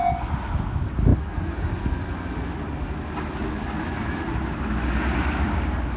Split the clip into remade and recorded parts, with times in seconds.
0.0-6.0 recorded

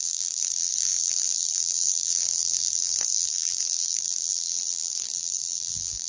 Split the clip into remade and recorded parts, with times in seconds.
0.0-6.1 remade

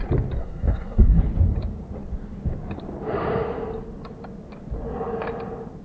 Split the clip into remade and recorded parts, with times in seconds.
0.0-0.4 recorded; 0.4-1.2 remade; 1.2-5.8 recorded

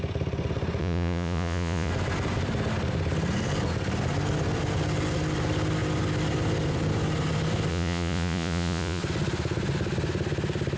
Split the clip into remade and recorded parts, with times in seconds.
0.0-0.8 recorded; 0.8-1.9 remade; 1.9-7.7 recorded; 7.7-9.0 remade; 9.0-10.8 recorded

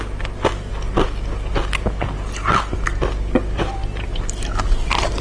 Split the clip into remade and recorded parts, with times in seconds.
0.0-5.2 recorded

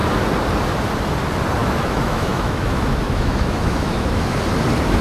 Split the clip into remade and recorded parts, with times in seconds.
0.0-1.6 recorded; 1.6-4.4 remade; 4.4-5.0 recorded